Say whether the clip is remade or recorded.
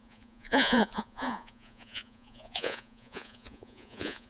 remade